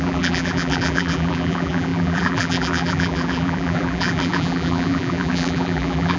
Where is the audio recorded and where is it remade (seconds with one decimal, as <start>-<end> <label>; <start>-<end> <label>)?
0.0-6.2 remade